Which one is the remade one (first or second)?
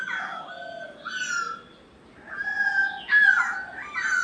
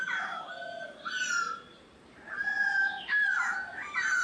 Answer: second